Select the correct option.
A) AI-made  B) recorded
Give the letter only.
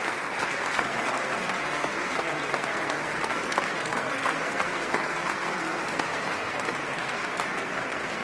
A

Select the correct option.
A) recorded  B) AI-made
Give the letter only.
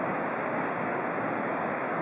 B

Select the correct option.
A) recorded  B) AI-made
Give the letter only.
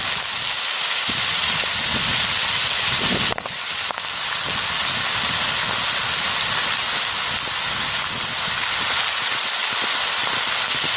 A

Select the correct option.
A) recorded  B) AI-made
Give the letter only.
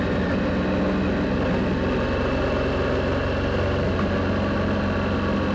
A